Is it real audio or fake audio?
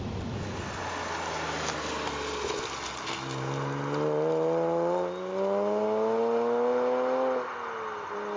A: real